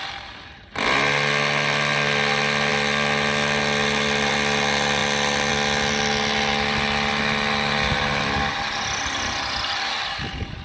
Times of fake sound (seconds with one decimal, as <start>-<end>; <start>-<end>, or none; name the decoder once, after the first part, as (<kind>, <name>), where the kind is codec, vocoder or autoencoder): none